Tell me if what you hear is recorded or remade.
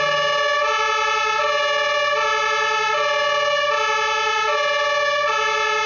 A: recorded